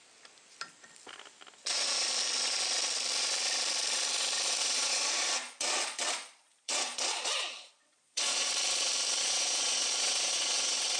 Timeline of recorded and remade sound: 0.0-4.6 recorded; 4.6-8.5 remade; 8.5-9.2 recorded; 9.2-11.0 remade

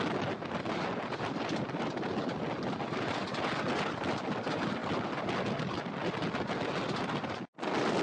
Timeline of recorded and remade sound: 0.0-8.0 recorded

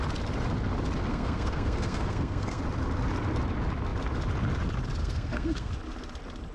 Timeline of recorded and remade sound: 0.0-1.1 recorded; 1.1-2.6 remade; 2.6-5.0 recorded; 5.0-5.7 remade; 5.7-6.5 recorded

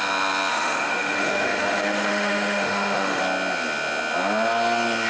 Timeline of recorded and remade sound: 0.0-0.5 recorded; 0.5-3.2 remade; 3.2-5.1 recorded

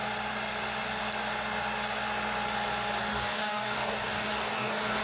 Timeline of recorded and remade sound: 0.0-3.0 recorded; 3.0-5.0 remade

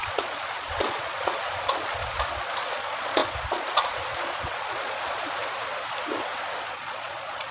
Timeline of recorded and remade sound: 0.0-5.4 remade; 5.4-6.6 recorded; 6.6-7.5 remade